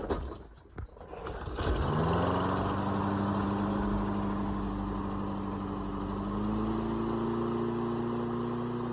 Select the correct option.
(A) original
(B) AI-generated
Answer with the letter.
A